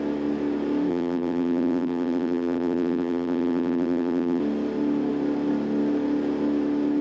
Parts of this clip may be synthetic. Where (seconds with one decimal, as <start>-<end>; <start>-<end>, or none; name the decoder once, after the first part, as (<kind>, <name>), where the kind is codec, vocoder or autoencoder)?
0.9-4.4 (vocoder, BigVGAN v2)